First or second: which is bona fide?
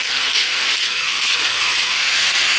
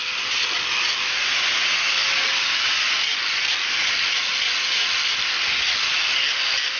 second